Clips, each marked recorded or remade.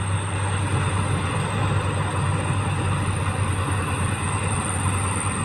recorded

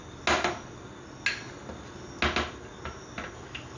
recorded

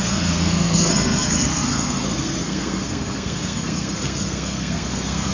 remade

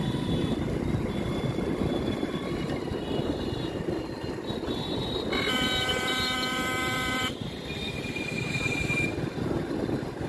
recorded